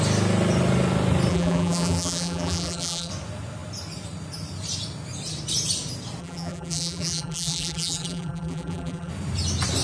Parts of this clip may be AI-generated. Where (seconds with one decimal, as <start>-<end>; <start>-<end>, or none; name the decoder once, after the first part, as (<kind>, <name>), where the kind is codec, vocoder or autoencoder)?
1.3-3.1 (vocoder, BigVGAN v2); 6.2-9.1